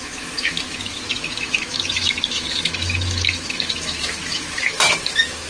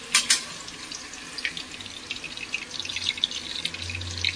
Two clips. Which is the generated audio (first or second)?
first